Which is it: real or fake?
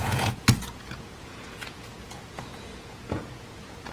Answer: fake